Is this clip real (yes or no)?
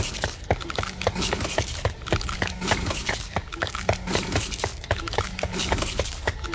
no